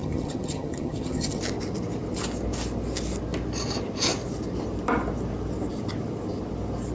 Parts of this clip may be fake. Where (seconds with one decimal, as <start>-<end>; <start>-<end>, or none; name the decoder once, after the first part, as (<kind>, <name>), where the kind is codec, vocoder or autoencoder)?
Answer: 0.0-1.4 (vocoder, HiFi-GAN)